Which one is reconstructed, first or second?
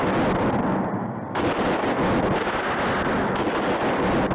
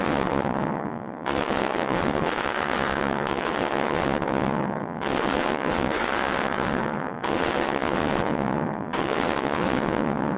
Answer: second